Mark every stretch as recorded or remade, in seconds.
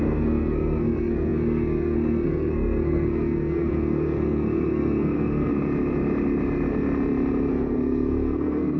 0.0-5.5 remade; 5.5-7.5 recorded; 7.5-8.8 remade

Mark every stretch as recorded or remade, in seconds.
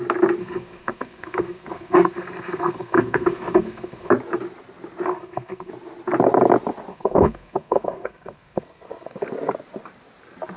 0.0-0.4 recorded; 0.4-4.1 remade; 4.1-5.1 recorded; 5.1-5.7 remade; 5.7-6.9 recorded; 6.9-9.2 remade; 9.2-10.6 recorded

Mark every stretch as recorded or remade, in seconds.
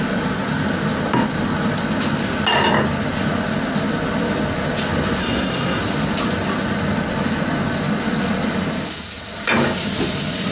0.0-5.2 recorded; 5.2-5.8 remade; 5.8-10.5 recorded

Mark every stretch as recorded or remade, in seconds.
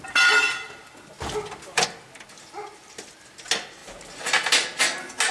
0.0-5.3 recorded